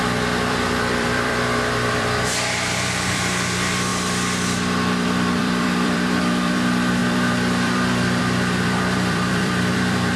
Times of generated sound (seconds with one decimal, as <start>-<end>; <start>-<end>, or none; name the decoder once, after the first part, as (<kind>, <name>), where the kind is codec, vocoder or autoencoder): 0.0-10.2 (vocoder, BigVGAN v2)